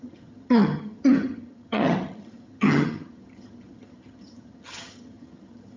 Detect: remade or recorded remade